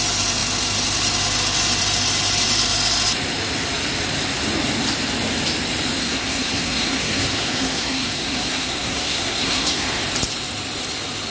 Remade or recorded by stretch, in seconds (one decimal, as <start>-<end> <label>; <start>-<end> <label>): 0.0-6.0 recorded; 6.0-10.0 remade; 10.0-11.3 recorded

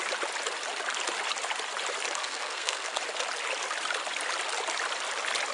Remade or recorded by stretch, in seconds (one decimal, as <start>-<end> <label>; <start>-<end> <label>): 0.0-2.2 recorded; 2.2-3.0 remade; 3.0-5.5 recorded

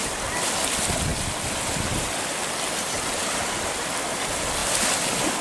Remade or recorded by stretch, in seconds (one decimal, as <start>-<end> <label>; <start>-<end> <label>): 0.0-5.4 recorded

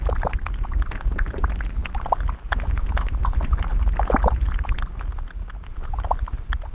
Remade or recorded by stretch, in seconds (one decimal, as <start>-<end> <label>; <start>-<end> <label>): 0.0-6.7 recorded

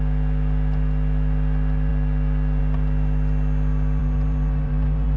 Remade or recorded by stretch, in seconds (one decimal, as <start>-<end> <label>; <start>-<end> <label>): 0.0-4.0 recorded; 4.0-5.2 remade

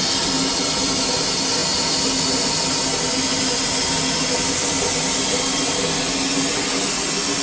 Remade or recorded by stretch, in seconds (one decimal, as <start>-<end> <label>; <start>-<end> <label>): 0.0-7.4 recorded

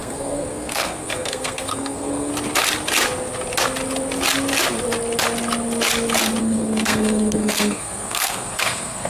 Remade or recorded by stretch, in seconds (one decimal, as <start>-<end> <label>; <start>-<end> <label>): 0.0-2.3 remade; 2.3-6.4 recorded; 6.4-9.1 remade